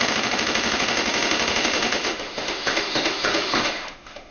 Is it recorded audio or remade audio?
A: remade